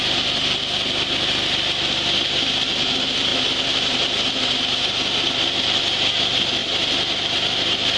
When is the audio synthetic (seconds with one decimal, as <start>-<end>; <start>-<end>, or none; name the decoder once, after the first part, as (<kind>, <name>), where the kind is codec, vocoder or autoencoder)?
none